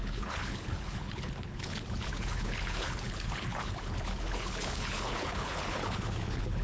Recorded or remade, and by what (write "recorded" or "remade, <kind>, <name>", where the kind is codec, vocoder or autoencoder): remade, codec, HILCodec